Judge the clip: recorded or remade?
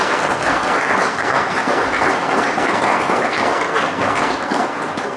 remade